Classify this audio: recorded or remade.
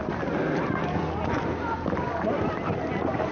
recorded